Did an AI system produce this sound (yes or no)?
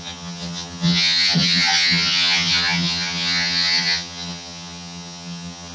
yes